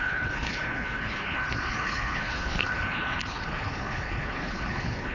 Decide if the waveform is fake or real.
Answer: fake